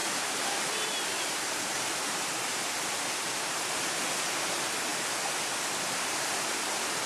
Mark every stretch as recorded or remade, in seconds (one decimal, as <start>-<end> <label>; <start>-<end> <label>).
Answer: 0.0-7.1 recorded